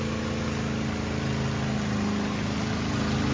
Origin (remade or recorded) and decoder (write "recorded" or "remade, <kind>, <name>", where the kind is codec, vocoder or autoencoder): recorded